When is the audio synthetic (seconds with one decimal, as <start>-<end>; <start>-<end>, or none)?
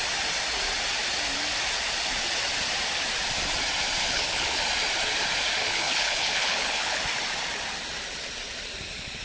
4.0-4.6; 5.6-7.0